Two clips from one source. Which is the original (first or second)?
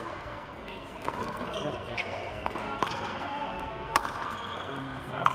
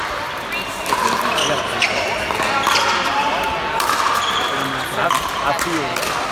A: second